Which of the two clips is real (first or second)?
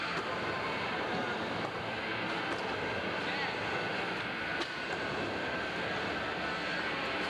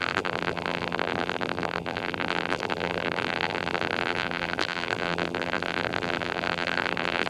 first